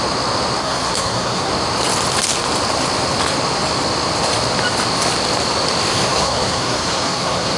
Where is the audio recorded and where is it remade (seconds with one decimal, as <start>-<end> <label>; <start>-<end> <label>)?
0.0-0.6 recorded; 0.6-1.5 remade; 1.5-5.9 recorded; 5.9-7.6 remade